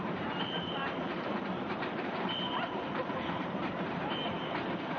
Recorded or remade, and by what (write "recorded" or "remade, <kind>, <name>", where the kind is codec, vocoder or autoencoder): remade, vocoder, BigVGAN v2